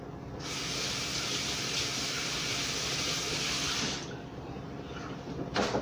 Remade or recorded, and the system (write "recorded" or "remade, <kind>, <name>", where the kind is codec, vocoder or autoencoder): recorded